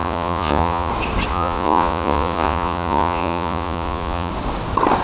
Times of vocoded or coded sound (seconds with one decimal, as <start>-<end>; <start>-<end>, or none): 0.0-0.9; 1.3-4.3